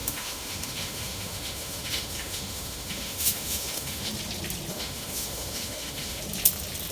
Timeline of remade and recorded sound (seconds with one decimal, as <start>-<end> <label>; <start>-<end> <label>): 0.0-4.1 remade; 4.1-4.7 recorded; 4.7-6.2 remade; 6.2-6.9 recorded

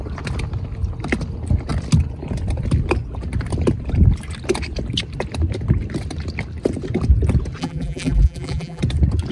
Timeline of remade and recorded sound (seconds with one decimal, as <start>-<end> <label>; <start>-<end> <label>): 0.0-7.6 recorded; 7.6-8.8 remade; 8.8-9.3 recorded